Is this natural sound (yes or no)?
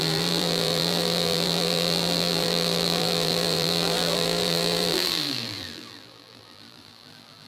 no